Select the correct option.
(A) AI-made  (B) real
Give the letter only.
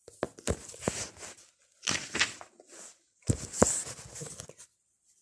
B